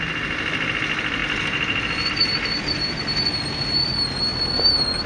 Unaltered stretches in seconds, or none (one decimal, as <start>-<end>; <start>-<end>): 0.0-5.1

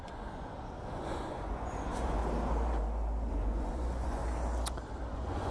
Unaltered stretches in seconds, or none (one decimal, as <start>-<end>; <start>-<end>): 2.2-3.3; 4.2-5.1

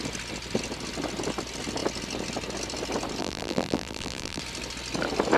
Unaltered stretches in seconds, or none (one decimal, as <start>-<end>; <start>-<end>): 0.0-3.2; 4.4-5.4